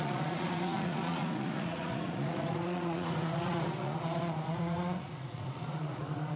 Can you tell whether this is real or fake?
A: fake